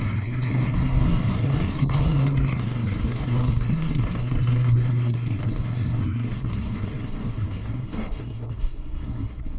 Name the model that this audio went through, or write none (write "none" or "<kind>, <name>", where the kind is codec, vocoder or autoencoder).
codec, SNAC